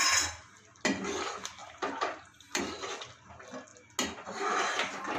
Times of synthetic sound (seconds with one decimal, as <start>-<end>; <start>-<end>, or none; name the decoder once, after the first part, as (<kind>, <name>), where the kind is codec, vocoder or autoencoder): 1.6-2.6 (vocoder, BigVGAN v2)